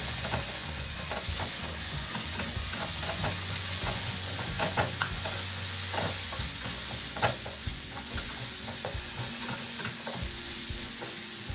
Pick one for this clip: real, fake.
fake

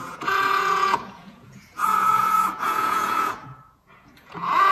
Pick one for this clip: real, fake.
fake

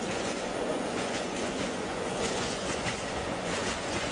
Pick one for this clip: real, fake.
fake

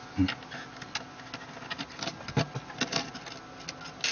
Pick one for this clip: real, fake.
real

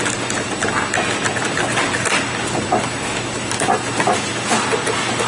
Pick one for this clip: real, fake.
real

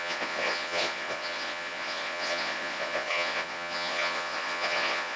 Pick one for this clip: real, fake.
fake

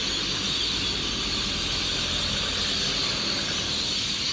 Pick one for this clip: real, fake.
real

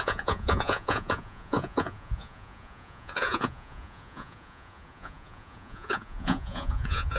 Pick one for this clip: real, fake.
fake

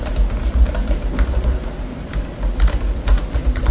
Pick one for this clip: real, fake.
real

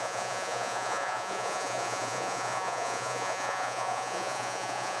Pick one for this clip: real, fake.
fake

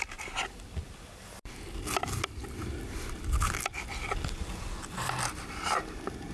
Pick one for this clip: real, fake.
real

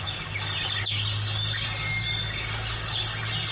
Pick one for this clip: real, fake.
real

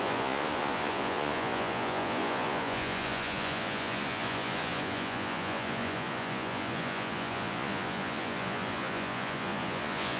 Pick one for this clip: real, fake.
fake